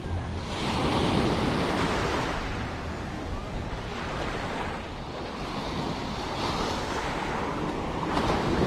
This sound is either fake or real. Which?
real